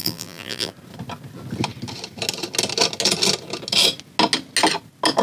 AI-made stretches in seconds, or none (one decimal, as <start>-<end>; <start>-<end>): 0.0-0.7